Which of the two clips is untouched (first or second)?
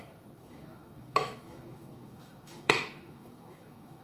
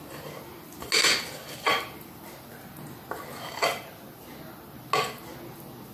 second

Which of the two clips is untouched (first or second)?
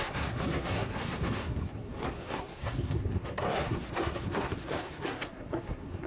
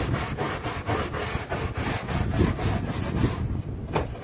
second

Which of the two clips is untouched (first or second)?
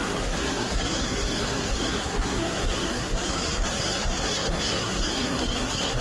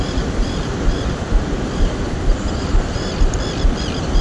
second